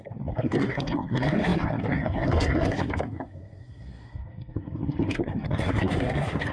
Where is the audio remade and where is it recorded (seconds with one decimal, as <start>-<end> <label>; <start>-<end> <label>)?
0.0-6.5 remade